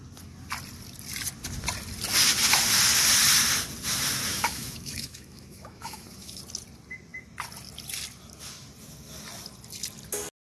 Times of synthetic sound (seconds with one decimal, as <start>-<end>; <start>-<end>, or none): 4.3-6.4

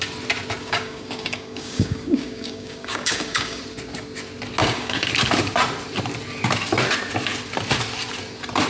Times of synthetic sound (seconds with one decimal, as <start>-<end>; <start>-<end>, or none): 0.6-3.6; 4.6-5.1

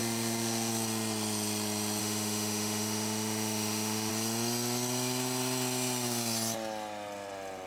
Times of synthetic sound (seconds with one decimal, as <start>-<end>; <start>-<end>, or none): 0.0-0.7; 2.0-4.1

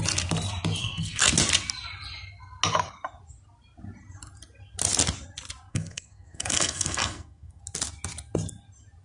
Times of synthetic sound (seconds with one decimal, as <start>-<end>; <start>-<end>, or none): 0.8-1.3; 5.7-7.6